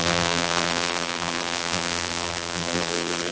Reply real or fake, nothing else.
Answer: fake